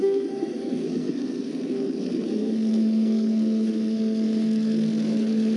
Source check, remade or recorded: remade